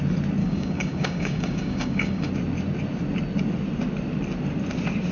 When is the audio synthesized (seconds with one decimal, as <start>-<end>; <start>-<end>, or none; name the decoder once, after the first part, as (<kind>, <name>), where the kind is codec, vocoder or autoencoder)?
0.4-2.3 (codec, DAC)